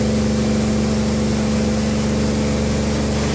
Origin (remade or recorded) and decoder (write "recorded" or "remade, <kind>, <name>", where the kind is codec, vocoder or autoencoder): recorded